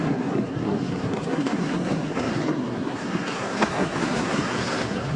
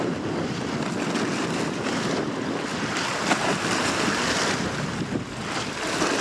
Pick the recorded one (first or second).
second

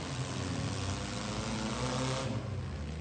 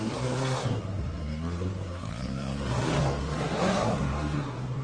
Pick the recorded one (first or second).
first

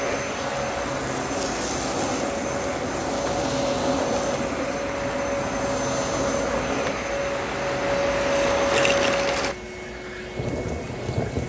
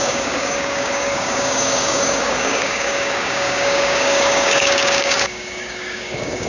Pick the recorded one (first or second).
first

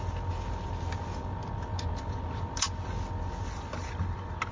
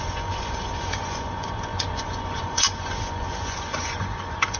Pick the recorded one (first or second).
first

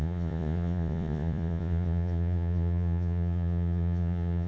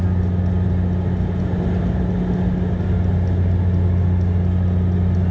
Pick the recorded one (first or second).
second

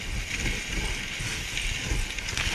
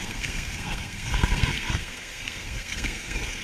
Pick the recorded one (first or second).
first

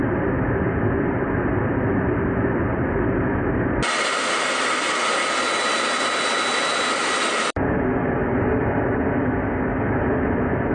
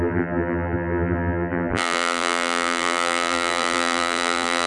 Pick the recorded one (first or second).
first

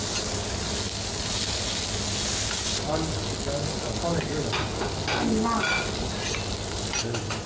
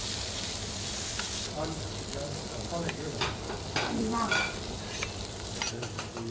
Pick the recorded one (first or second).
first